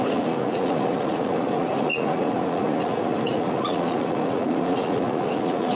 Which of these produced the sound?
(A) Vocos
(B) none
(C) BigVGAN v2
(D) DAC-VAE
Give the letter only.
A